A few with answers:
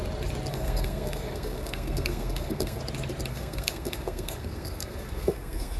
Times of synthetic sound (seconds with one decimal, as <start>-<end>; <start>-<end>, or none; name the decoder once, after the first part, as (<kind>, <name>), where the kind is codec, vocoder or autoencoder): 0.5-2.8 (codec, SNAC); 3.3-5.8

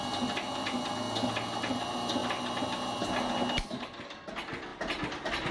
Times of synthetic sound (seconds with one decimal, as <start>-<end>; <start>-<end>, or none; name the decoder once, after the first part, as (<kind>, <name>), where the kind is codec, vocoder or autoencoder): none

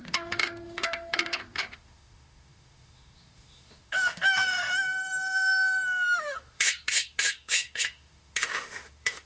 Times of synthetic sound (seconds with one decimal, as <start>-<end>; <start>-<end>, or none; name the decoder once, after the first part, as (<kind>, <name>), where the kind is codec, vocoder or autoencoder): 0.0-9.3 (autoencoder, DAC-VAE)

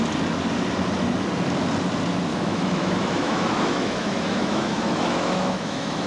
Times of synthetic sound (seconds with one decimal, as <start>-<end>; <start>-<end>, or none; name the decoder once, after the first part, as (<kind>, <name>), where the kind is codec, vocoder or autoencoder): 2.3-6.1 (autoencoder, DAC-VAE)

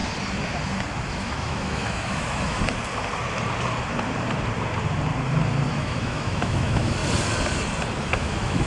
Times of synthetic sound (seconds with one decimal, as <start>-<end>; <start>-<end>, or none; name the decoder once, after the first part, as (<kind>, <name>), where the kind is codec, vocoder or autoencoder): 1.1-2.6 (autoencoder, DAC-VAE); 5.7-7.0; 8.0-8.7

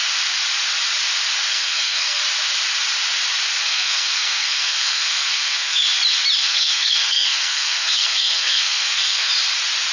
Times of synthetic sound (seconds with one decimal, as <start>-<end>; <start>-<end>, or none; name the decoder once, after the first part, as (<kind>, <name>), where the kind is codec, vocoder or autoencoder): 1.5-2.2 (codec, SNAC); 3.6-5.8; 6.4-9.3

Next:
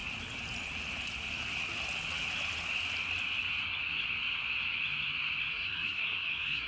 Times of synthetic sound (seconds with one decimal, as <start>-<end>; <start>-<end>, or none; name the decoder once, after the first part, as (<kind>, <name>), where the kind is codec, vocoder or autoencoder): 5.5-6.7 (codec, SNAC)

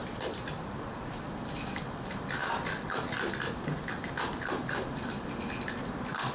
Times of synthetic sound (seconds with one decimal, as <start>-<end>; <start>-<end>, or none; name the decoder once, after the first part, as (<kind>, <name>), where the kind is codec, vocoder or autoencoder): none